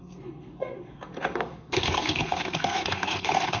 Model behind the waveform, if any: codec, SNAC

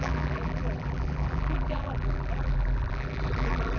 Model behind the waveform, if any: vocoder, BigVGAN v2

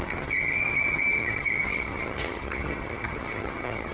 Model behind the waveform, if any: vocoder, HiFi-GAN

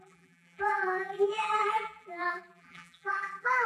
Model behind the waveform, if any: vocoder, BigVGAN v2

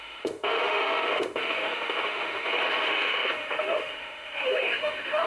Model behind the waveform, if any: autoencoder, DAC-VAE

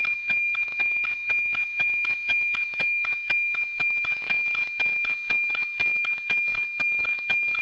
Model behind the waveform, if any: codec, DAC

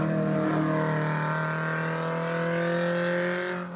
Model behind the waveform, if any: none